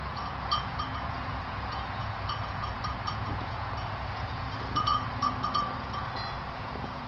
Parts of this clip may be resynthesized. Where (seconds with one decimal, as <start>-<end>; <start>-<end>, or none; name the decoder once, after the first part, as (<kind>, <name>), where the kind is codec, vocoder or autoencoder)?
0.0-7.1 (vocoder, Vocos)